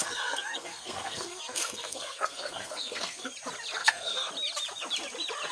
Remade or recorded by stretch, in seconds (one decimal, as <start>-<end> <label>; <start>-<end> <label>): 0.0-3.3 remade; 3.3-3.8 recorded; 3.8-4.3 remade; 4.3-5.5 recorded